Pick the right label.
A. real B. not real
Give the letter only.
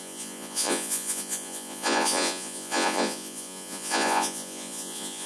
B